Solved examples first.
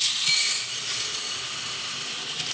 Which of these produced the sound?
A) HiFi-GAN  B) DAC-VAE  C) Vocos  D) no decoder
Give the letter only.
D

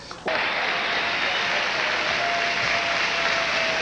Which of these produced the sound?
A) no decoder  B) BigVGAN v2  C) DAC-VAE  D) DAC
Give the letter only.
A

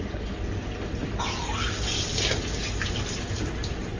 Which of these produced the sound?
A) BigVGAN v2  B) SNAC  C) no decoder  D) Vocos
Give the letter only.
C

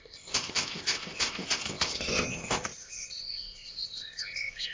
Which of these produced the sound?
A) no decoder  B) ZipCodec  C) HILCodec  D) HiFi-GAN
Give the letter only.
B